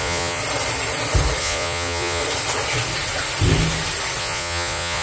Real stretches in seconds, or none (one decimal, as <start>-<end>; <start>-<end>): 0.4-1.4; 2.2-4.2